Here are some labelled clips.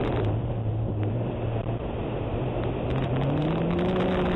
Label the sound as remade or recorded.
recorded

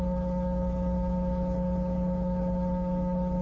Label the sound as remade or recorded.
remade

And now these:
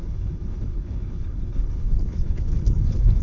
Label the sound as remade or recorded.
remade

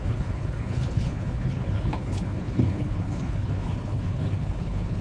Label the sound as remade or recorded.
remade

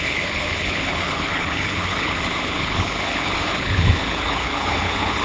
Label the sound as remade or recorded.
remade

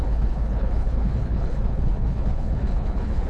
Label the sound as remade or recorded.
remade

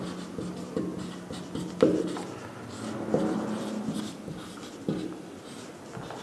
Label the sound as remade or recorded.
recorded